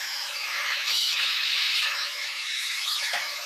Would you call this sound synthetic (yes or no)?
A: yes